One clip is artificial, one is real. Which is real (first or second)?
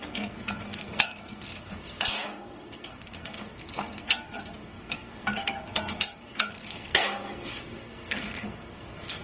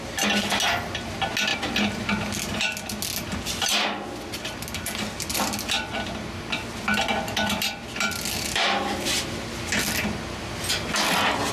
second